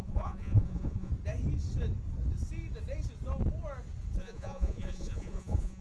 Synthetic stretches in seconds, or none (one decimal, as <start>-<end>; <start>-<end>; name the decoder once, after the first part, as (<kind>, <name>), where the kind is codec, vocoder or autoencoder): 0.0-1.1 (vocoder, Vocos); 4.2-5.8

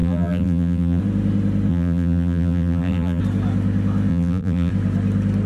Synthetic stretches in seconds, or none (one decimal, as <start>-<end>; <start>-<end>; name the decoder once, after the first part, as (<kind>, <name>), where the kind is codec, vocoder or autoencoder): 0.0-1.0 (vocoder, BigVGAN v2); 1.7-3.2; 4.1-4.7